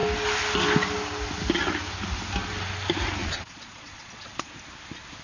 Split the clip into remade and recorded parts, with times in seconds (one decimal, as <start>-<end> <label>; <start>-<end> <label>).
0.0-3.2 recorded; 3.2-4.5 remade; 4.5-5.2 recorded